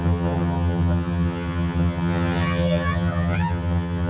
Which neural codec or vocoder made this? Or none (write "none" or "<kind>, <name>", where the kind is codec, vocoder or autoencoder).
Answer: vocoder, HiFi-GAN